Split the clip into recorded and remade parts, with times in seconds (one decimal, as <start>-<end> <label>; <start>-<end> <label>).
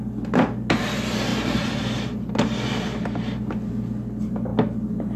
0.0-5.2 recorded